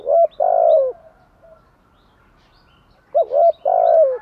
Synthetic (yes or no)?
no